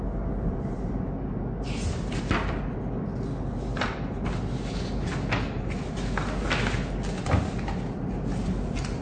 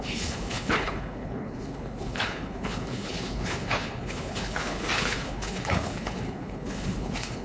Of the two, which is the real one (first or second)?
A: first